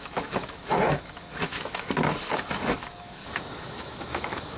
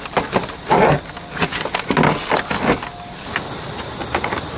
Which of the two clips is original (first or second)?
second